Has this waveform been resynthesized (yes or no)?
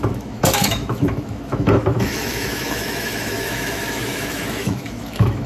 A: yes